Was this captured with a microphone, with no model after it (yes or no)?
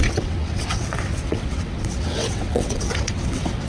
no